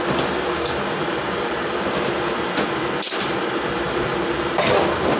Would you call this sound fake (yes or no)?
no